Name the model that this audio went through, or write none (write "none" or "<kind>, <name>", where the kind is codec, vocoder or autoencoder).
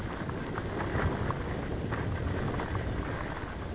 none